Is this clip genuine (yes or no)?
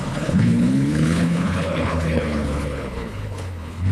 no